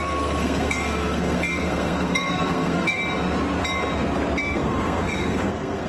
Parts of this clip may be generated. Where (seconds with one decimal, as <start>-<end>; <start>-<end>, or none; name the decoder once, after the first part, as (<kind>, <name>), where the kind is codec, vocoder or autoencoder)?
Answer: 0.0-3.0 (codec, SNAC); 4.4-5.9